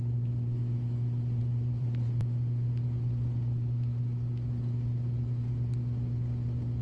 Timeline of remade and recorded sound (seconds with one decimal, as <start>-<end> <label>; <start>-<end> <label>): 0.0-1.4 recorded; 1.4-2.2 remade; 2.2-6.8 recorded